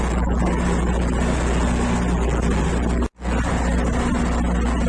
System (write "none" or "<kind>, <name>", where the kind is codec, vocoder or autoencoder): none